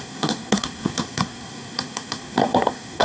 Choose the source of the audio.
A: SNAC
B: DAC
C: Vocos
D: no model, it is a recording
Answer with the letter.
A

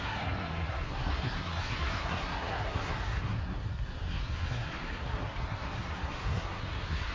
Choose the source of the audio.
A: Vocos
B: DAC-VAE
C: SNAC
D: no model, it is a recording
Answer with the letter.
C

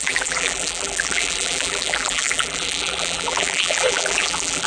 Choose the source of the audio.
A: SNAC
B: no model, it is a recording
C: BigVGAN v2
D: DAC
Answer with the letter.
C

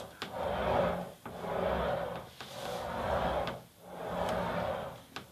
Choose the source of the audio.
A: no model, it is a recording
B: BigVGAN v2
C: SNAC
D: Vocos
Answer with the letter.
A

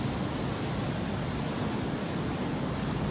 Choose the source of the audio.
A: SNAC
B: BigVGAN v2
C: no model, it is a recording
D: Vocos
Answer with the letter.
C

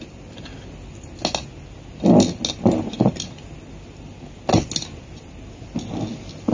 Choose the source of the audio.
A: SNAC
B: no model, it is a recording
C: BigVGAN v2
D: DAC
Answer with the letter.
B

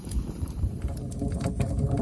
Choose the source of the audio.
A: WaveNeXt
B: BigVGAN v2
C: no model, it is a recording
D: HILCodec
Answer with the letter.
B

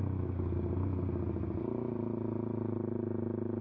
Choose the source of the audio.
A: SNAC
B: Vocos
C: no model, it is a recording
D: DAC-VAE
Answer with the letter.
C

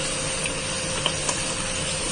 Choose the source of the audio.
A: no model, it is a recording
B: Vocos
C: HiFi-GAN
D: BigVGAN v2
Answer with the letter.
A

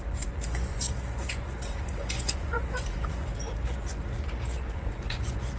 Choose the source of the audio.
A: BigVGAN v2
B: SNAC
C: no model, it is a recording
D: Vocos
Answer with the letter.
D